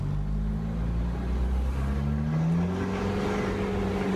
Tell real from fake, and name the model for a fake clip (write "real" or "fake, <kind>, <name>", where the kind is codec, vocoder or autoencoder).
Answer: real